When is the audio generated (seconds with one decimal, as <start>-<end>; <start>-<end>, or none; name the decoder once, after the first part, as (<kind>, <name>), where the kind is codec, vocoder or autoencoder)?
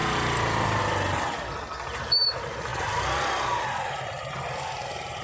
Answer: none